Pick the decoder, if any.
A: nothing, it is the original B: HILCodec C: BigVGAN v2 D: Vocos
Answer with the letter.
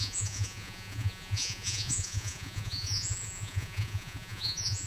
D